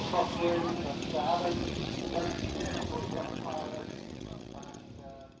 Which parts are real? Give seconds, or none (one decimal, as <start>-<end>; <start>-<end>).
0.0-1.6; 4.8-5.4